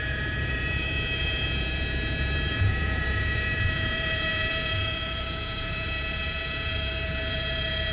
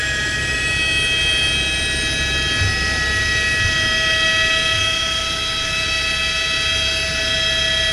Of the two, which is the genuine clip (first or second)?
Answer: second